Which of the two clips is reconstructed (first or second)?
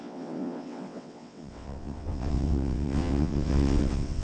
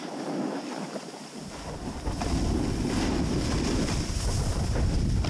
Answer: first